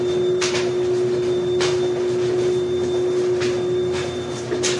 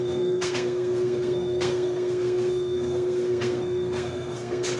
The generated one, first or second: second